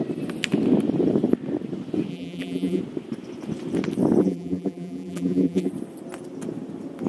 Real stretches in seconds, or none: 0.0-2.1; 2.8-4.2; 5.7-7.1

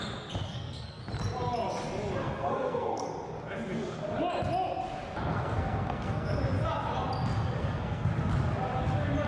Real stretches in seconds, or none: 0.0-0.4; 1.0-2.2; 3.1-5.3; 6.4-7.6; 8.1-9.3

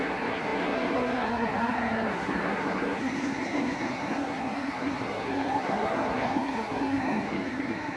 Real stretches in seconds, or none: none

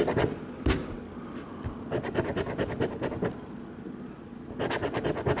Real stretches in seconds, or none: 0.0-5.4